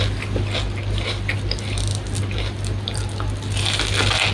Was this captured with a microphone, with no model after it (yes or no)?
yes